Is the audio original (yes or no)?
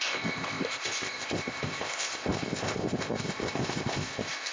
no